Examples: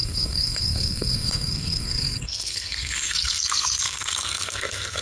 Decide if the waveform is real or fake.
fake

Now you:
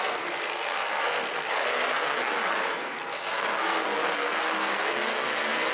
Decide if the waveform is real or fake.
fake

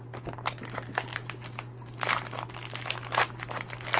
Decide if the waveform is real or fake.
real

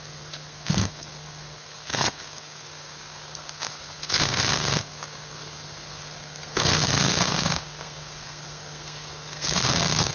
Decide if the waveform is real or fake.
fake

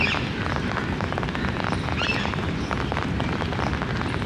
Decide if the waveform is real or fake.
real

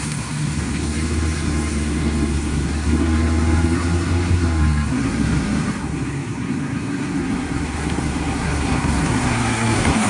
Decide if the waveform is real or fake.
fake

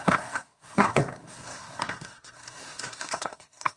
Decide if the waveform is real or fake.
fake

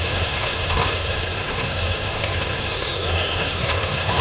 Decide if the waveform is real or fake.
fake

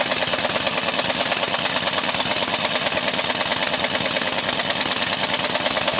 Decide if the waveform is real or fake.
real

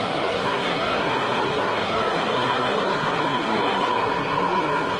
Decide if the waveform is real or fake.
fake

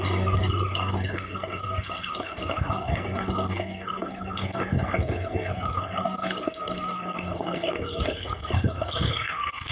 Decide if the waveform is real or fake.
fake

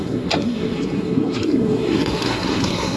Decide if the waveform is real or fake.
fake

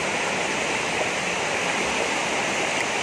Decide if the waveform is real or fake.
real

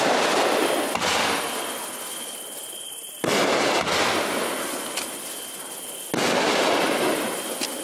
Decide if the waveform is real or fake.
real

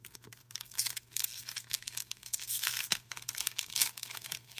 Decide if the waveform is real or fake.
fake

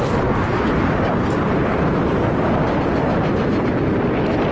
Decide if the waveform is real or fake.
real